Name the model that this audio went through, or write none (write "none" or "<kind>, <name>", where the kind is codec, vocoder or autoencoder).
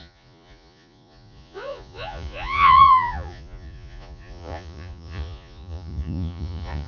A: vocoder, Vocos